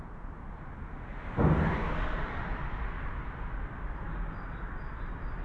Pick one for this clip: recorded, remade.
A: recorded